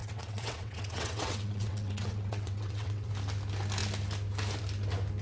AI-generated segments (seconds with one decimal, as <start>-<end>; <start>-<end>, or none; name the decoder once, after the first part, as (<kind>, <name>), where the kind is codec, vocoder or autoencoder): 0.0-3.1 (vocoder, WaveNeXt)